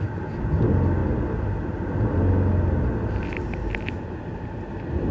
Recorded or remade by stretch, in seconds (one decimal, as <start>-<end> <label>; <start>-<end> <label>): 0.0-5.1 recorded